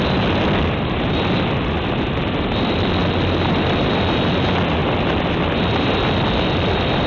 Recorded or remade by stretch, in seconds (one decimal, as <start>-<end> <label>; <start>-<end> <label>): 0.0-3.0 recorded; 3.0-3.9 remade; 3.9-4.8 recorded; 4.8-5.9 remade; 5.9-7.1 recorded